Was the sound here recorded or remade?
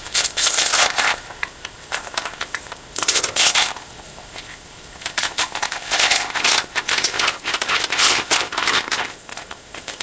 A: remade